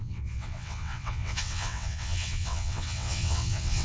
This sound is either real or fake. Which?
fake